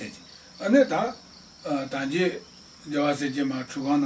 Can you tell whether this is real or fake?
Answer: real